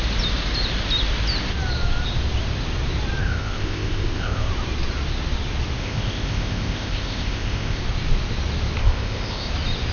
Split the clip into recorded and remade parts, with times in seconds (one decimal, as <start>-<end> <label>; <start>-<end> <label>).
0.0-3.2 recorded; 3.2-4.5 remade; 4.5-5.8 recorded; 5.8-7.8 remade; 7.8-8.8 recorded; 8.8-9.5 remade; 9.5-9.9 recorded